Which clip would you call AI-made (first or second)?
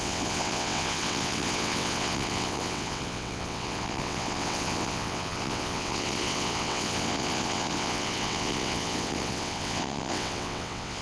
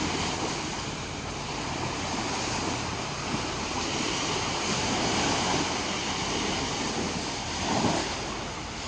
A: first